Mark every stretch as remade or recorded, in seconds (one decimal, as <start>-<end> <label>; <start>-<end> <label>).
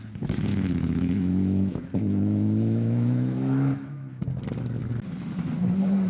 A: 0.0-0.5 recorded; 0.5-4.2 remade; 4.2-6.1 recorded